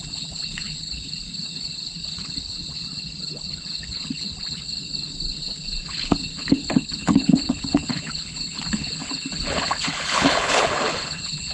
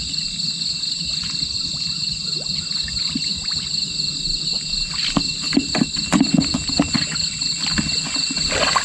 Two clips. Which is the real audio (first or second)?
second